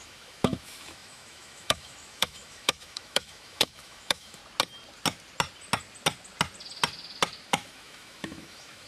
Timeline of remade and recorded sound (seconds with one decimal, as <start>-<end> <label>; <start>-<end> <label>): 0.0-4.4 remade; 4.4-7.5 recorded; 7.5-8.9 remade